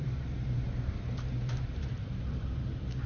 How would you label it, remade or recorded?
remade